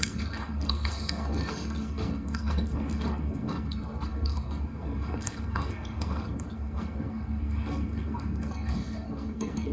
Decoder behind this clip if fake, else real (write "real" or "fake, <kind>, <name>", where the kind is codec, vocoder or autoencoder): fake, codec, SNAC